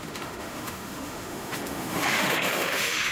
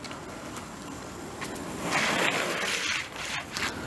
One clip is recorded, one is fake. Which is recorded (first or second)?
second